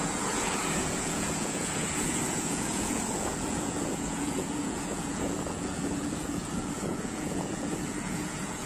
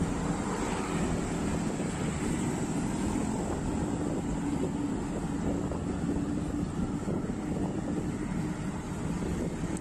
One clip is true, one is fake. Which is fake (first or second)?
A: first